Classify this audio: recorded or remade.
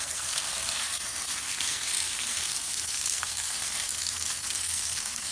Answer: remade